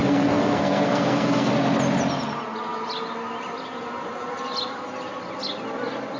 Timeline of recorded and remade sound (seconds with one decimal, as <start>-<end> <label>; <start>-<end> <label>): 0.0-1.5 remade; 1.5-6.2 recorded